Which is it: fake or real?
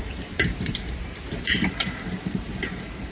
fake